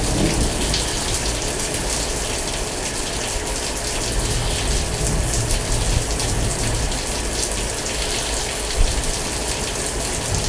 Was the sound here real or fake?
real